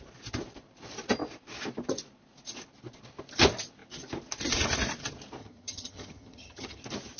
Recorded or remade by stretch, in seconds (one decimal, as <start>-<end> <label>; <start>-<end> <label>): 0.0-5.4 recorded; 5.4-6.8 remade; 6.8-7.2 recorded